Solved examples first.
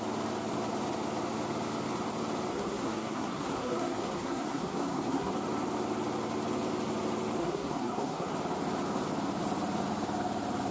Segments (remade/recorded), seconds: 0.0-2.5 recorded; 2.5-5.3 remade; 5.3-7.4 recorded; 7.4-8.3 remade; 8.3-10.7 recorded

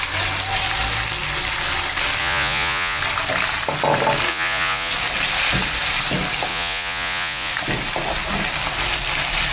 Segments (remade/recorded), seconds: 0.0-2.2 recorded; 2.2-3.0 remade; 3.0-4.3 recorded; 4.3-4.9 remade; 4.9-6.5 recorded; 6.5-7.5 remade; 7.5-9.5 recorded

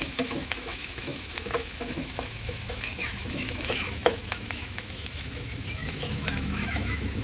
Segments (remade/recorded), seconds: 0.0-7.2 remade

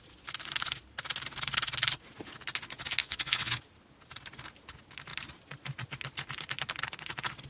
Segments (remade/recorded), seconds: 0.0-3.0 recorded; 3.0-3.6 remade; 3.6-7.5 recorded

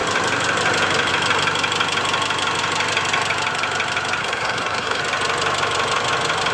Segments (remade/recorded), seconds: 0.0-4.2 recorded; 4.2-5.0 remade; 5.0-6.5 recorded

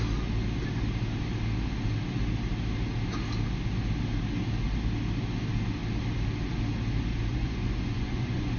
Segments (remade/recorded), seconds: 0.0-7.3 recorded; 7.3-8.6 remade

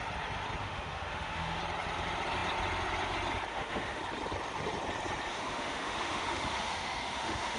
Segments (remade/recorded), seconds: 0.0-0.6 recorded; 0.6-1.6 remade; 1.6-3.5 recorded; 3.5-4.0 remade; 4.0-5.3 recorded; 5.3-7.6 remade